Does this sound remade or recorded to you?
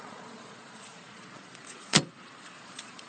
remade